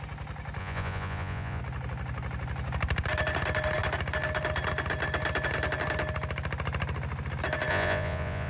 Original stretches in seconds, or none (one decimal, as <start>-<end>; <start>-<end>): 0.0-0.6; 1.6-7.7